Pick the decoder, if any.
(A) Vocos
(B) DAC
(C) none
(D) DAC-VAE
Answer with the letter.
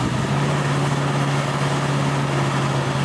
C